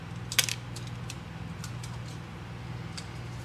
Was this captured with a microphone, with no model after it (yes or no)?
yes